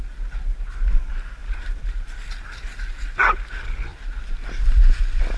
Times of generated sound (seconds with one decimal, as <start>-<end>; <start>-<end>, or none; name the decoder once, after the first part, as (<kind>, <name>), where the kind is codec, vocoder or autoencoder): none